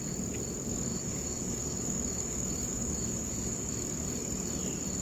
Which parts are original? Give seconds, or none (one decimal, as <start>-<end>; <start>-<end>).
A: 0.0-0.9; 3.7-5.0